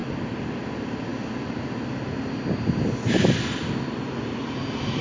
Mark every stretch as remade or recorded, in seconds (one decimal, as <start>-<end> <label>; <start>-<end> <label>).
0.0-5.0 recorded